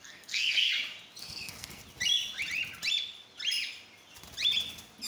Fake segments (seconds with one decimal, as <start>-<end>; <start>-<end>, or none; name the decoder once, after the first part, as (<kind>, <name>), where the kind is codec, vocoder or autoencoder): 0.0-0.7 (codec, SNAC); 1.2-1.8